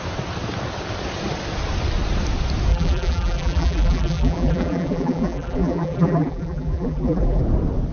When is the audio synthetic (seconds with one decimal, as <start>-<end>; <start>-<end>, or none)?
2.7-7.4